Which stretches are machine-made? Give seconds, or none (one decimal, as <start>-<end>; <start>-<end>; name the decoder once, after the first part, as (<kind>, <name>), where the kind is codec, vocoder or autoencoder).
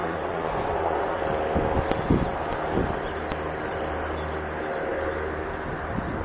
0.0-1.2 (vocoder, Vocos)